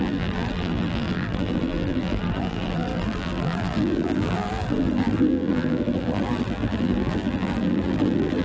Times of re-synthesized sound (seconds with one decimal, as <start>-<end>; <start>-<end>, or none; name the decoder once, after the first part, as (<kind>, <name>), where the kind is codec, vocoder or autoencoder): 0.0-8.4 (vocoder, BigVGAN v2)